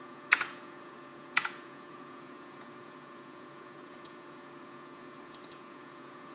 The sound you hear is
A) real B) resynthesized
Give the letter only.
B